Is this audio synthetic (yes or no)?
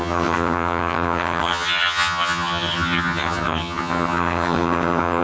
yes